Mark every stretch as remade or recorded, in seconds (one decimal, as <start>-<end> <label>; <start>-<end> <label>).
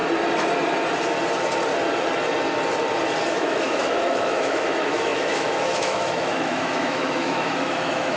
0.0-3.3 recorded; 3.3-8.2 remade